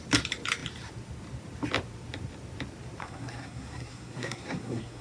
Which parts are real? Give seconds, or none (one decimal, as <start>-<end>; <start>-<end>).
0.0-3.0